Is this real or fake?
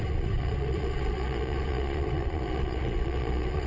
fake